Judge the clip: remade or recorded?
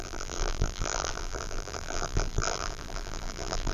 remade